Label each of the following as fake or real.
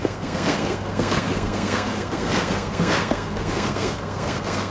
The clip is fake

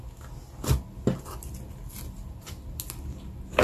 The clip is real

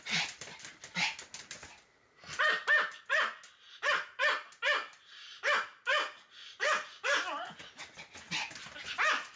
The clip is real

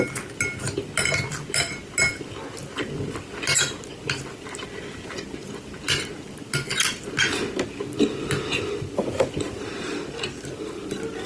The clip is real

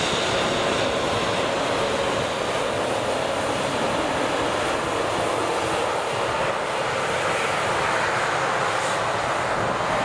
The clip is real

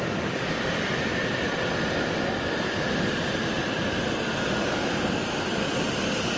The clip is real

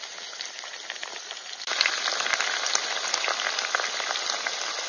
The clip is real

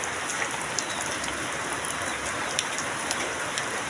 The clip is real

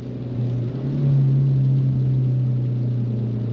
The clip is real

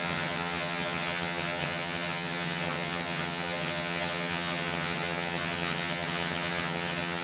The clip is fake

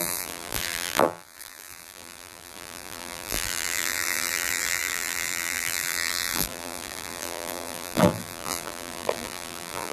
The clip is fake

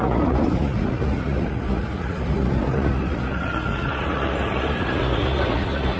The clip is fake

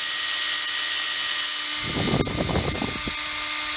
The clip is real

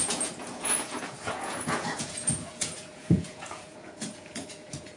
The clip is fake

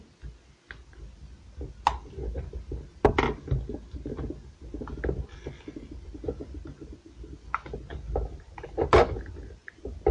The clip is real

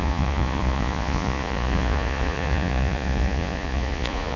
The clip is fake